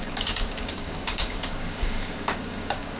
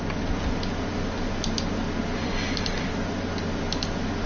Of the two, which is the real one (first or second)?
second